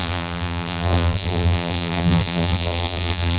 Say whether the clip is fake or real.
fake